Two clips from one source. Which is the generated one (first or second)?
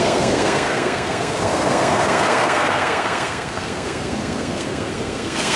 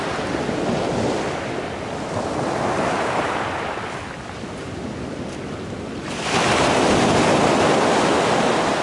first